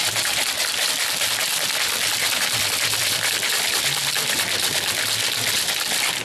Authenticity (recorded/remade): remade